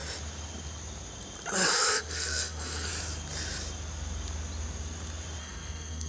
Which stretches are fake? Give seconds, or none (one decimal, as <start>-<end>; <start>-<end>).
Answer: 1.7-2.9; 5.4-6.1